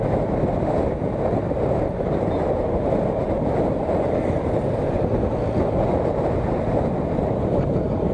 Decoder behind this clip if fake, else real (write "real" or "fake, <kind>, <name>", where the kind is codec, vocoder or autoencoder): real